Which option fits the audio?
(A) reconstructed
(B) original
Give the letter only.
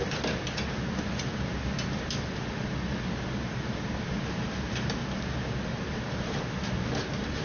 B